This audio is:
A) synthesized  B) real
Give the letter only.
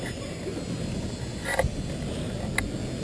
B